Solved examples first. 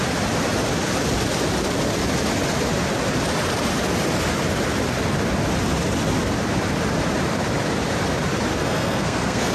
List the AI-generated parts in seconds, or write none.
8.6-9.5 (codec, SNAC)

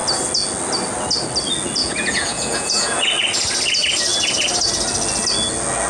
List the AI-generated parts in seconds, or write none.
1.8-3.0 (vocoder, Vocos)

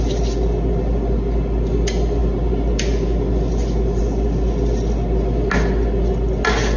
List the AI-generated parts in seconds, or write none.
none

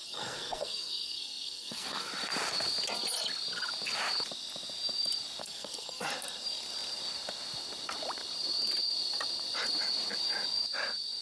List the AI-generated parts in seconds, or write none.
0.0-2.1 (codec, SNAC); 5.4-6.1

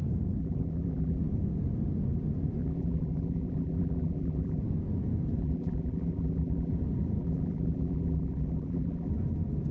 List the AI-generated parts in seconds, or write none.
0.4-1.2 (vocoder, BigVGAN v2); 2.6-4.6; 5.4-6.7; 7.2-9.1

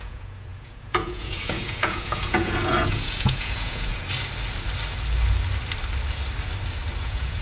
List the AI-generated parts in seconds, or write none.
0.0-3.9 (vocoder, Vocos); 7.0-7.4

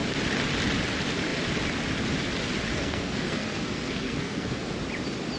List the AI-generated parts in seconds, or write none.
2.7-4.7 (codec, SNAC)

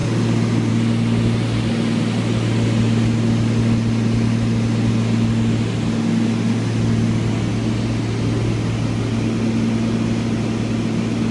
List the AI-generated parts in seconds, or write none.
none